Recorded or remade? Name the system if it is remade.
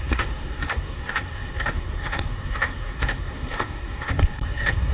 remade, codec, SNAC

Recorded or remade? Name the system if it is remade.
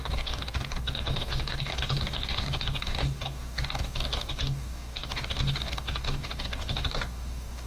remade, codec, DAC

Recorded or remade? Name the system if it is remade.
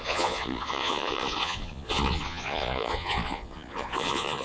remade, vocoder, Vocos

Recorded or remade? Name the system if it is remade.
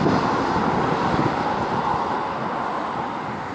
recorded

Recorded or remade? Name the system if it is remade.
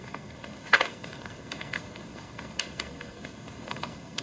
remade, codec, SNAC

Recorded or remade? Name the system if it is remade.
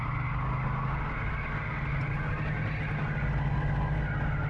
recorded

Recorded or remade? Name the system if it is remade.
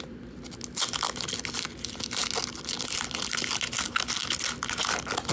recorded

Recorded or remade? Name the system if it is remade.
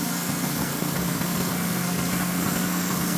remade, codec, SNAC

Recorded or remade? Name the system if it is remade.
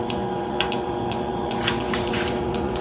remade, vocoder, Vocos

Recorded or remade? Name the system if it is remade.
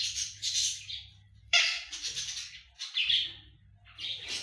remade, vocoder, BigVGAN v2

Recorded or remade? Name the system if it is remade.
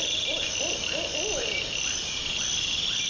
recorded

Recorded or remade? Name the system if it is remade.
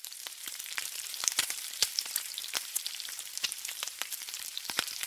remade, vocoder, BigVGAN v2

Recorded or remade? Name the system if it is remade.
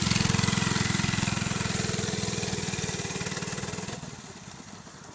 recorded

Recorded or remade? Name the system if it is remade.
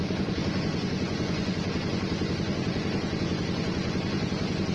remade, vocoder, Vocos